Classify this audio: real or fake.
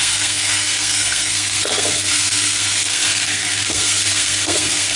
fake